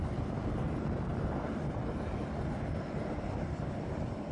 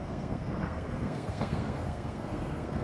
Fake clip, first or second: second